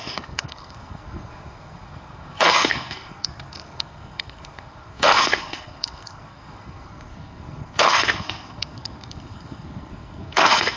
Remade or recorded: remade